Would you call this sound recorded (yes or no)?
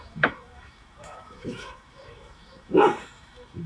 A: no